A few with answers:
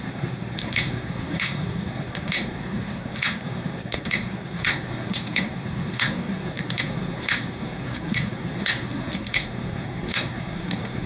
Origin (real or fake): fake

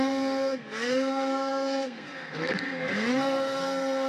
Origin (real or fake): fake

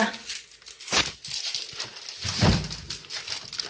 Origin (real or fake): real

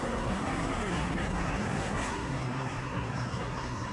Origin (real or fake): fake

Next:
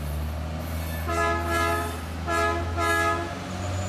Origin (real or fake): real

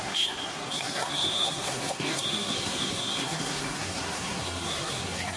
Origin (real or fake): fake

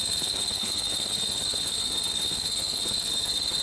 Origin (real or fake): fake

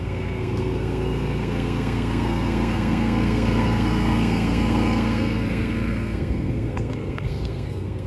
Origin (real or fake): fake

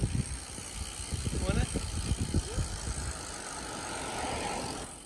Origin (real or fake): real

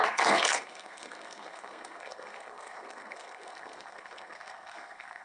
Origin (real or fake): fake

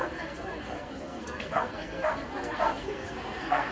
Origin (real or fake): fake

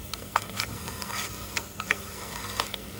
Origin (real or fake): fake